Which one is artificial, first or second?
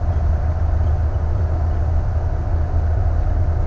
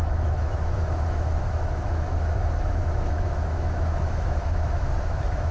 second